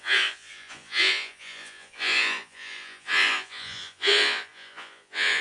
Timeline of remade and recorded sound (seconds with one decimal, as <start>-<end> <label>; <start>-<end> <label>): 0.0-5.4 remade